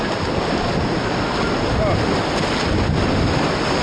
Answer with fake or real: real